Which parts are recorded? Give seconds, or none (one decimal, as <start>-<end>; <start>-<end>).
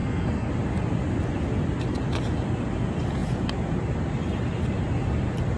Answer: 0.5-5.6